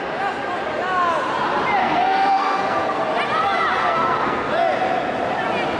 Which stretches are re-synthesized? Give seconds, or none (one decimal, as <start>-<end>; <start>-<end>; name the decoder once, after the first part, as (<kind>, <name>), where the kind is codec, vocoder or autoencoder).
1.8-3.0 (codec, SNAC); 3.8-4.5